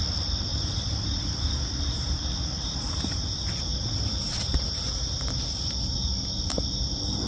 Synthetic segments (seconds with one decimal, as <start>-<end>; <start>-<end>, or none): 0.5-3.1; 3.7-5.3